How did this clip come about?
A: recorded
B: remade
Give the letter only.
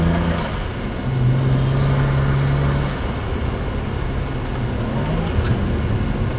A